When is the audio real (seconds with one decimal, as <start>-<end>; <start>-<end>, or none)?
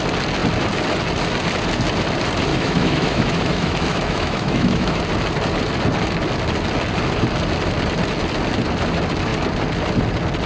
0.0-2.5; 5.0-10.5